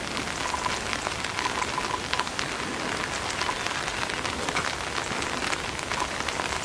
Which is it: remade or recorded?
recorded